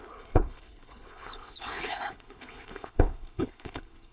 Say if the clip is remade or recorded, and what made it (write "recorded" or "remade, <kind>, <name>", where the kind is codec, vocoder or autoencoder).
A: remade, codec, HILCodec